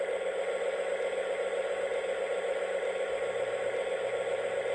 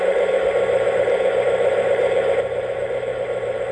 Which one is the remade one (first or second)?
second